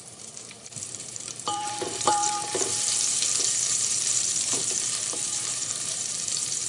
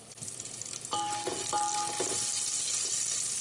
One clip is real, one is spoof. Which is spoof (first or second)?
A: first